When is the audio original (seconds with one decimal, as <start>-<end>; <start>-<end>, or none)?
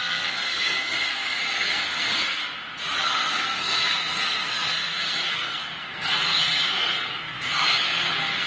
2.4-3.0